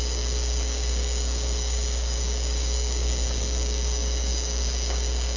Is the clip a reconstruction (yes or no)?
yes